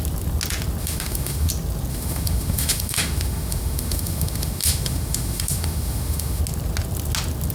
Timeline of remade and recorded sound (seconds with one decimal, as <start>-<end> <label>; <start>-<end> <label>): 0.0-0.8 recorded; 0.8-1.5 remade; 1.5-1.9 recorded; 1.9-6.4 remade; 6.4-7.5 recorded